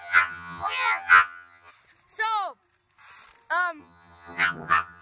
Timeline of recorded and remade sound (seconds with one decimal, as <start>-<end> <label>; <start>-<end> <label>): 0.0-1.7 remade; 1.7-3.8 recorded; 3.8-5.0 remade